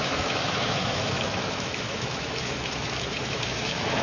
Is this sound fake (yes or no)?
yes